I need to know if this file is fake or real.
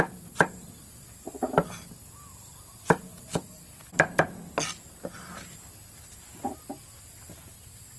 real